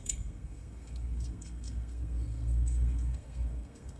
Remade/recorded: remade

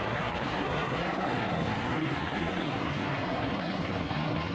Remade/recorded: remade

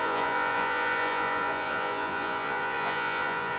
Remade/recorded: remade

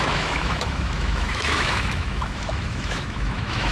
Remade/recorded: remade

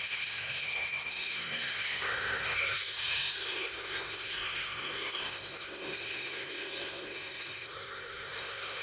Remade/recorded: remade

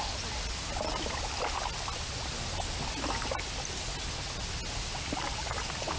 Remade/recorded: recorded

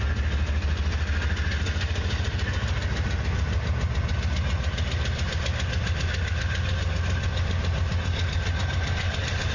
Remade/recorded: recorded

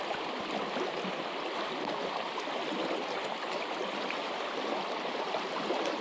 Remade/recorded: recorded